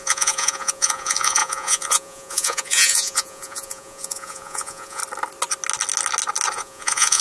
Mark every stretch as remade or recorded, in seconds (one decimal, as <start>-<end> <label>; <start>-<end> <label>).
0.0-5.0 remade; 5.0-6.5 recorded; 6.5-7.2 remade